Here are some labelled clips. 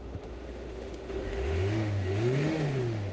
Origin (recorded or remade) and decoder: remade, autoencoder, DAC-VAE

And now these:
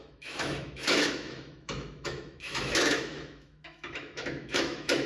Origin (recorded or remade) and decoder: remade, autoencoder, DAC-VAE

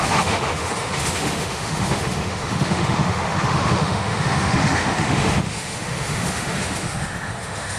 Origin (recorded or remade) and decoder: remade, autoencoder, DAC-VAE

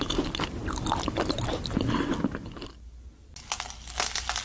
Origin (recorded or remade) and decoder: recorded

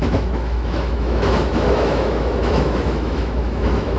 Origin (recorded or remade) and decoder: remade, autoencoder, DAC-VAE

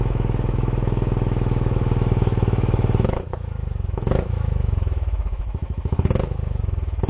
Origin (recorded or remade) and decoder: remade, autoencoder, DAC-VAE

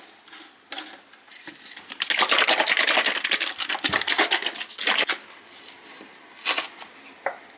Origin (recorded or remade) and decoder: recorded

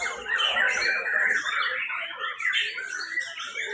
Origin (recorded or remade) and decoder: recorded